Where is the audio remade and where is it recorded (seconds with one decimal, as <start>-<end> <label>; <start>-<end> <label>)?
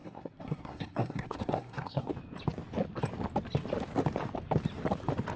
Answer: 0.0-2.1 remade; 2.1-5.4 recorded